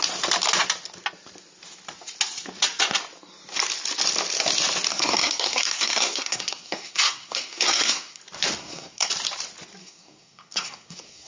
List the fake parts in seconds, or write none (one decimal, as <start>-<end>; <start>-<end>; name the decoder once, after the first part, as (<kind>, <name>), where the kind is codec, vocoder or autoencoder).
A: 4.9-8.2 (codec, SNAC); 8.6-9.1; 9.8-11.3